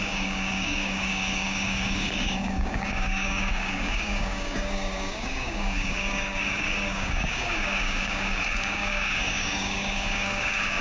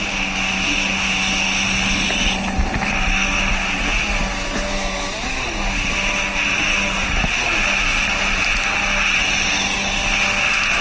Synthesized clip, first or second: first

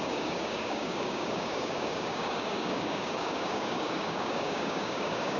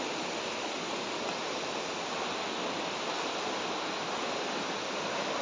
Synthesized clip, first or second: first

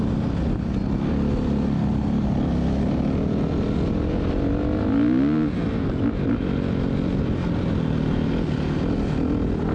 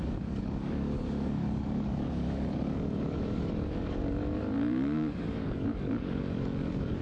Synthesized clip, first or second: second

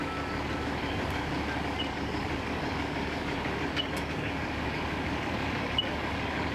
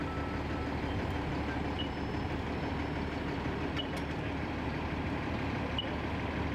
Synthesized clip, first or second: first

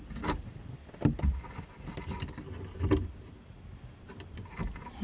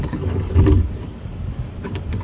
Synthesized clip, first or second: second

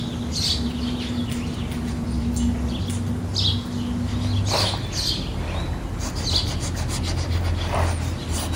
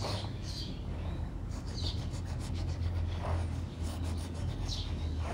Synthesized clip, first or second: second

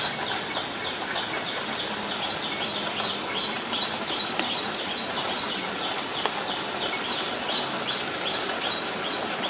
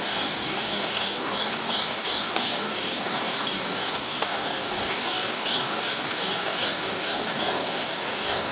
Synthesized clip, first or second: second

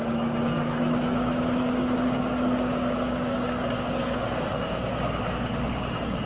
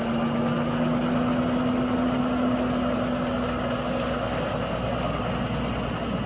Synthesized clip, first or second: first